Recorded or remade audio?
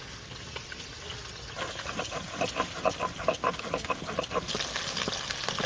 recorded